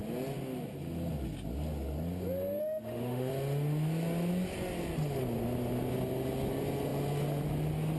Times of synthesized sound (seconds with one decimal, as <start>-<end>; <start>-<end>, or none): 2.6-3.3